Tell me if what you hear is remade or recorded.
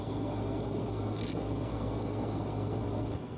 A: remade